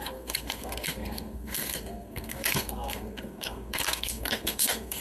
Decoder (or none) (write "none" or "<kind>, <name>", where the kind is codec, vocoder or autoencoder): codec, SNAC